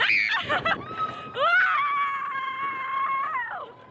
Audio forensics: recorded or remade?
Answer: recorded